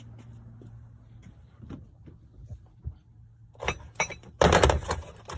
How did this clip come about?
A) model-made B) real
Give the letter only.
B